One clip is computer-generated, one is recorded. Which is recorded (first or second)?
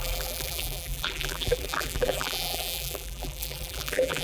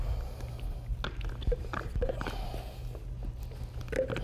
second